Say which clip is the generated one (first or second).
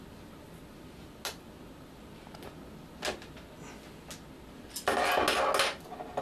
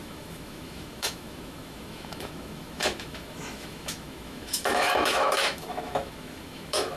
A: second